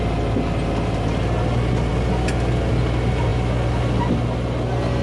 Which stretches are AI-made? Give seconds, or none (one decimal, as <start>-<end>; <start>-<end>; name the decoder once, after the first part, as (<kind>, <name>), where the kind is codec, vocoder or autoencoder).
none